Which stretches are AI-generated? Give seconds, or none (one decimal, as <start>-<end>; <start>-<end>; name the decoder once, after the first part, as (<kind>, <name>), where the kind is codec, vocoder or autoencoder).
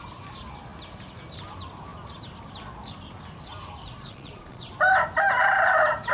3.8-4.7 (vocoder, Vocos)